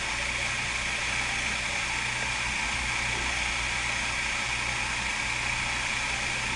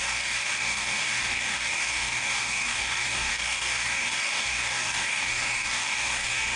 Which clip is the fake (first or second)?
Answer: second